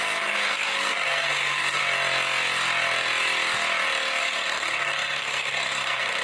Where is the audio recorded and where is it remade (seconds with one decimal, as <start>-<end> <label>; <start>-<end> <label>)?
0.0-1.8 remade; 1.8-4.2 recorded; 4.2-6.2 remade